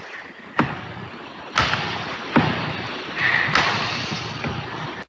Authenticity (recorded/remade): recorded